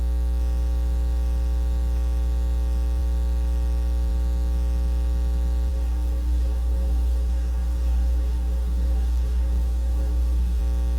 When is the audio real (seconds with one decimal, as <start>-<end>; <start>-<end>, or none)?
0.0-5.7; 10.6-11.0